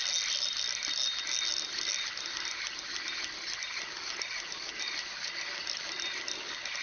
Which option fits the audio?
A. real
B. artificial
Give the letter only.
A